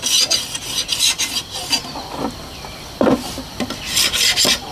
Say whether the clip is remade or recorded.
recorded